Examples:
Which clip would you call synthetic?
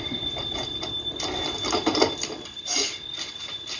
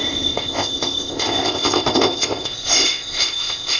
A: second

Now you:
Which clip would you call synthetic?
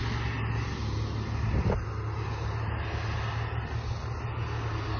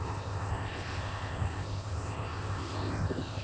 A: second